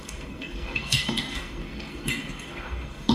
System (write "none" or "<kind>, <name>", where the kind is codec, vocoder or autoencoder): codec, SNAC